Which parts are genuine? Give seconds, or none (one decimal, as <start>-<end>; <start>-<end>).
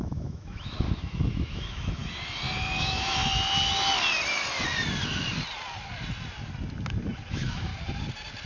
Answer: 2.0-2.8; 3.2-7.3; 7.7-8.5